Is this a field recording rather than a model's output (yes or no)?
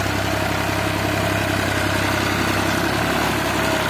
yes